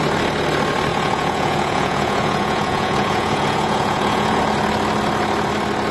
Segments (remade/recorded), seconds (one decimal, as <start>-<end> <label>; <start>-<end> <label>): 0.0-0.9 recorded; 0.9-4.4 remade; 4.4-5.9 recorded